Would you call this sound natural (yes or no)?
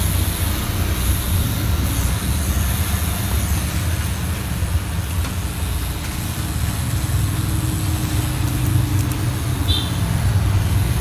yes